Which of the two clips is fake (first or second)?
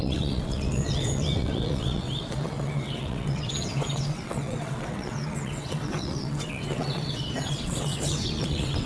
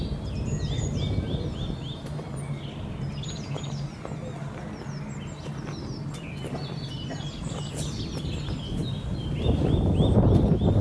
first